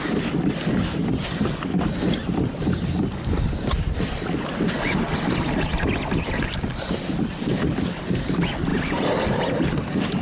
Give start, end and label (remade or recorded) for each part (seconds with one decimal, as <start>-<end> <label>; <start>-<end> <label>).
0.0-10.2 recorded